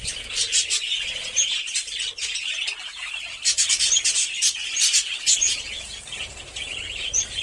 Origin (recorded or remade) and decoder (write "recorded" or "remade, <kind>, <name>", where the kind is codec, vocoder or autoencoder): remade, vocoder, BigVGAN v2